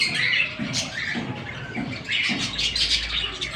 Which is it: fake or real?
real